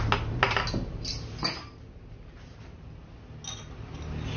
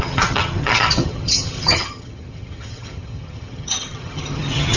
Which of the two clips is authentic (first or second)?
first